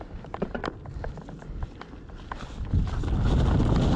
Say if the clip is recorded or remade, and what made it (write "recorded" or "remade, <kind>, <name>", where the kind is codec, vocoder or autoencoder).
recorded